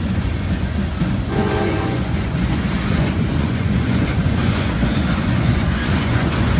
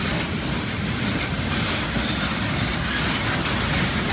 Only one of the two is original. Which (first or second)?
second